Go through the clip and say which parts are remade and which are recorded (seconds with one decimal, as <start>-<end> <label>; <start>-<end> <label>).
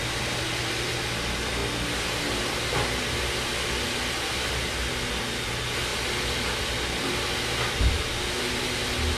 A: 0.0-5.9 recorded; 5.9-6.6 remade; 6.6-9.2 recorded